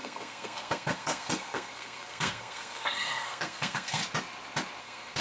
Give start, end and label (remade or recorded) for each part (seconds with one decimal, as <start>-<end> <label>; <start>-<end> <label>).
0.0-4.0 remade; 4.0-4.8 recorded; 4.8-5.2 remade

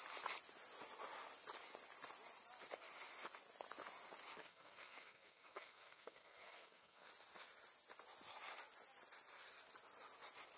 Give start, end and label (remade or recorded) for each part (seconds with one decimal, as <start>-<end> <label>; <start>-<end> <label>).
0.0-4.4 recorded; 4.4-7.1 remade; 7.1-10.6 recorded